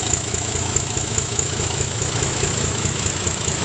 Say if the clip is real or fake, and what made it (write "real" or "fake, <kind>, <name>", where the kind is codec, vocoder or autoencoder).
fake, autoencoder, DAC-VAE